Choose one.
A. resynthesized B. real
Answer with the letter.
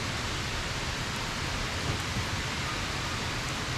B